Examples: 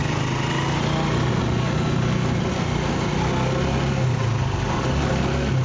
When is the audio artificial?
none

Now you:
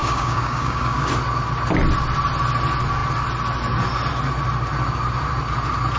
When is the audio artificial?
0.0-1.1 (codec, DAC)

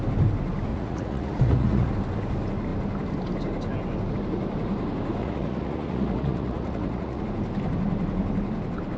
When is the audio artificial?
0.7-1.9 (vocoder, Vocos); 5.2-7.2

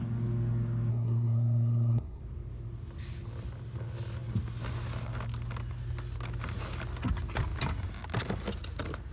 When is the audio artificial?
0.9-2.2 (codec, SNAC)